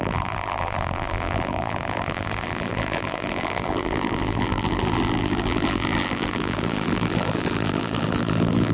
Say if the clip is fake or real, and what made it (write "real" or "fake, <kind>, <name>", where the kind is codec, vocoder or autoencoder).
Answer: fake, vocoder, BigVGAN v2